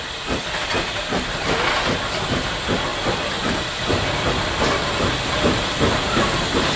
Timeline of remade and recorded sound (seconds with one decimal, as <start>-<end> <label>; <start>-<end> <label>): 0.0-6.8 recorded